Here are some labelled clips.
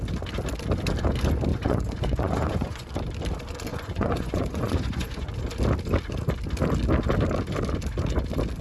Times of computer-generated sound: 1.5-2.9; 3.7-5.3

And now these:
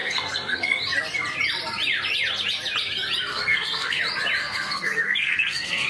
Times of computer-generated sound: 0.0-0.8; 3.3-4.0; 4.4-5.9

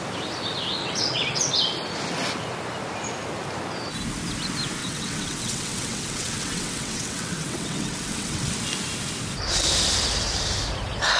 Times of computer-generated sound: 0.8-1.5; 4.8-8.5

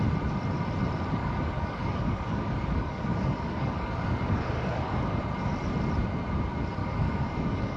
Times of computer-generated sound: 1.2-5.2; 6.8-7.8

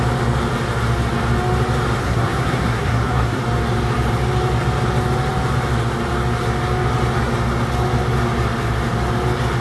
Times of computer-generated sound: 2.0-3.4